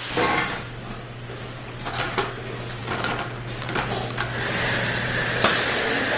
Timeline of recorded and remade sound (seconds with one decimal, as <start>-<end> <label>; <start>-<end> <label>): 0.0-6.2 recorded